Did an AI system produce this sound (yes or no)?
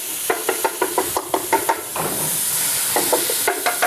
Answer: no